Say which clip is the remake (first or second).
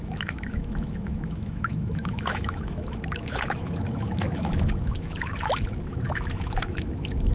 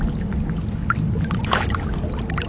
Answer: first